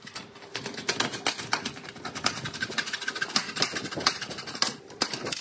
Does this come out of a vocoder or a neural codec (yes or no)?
no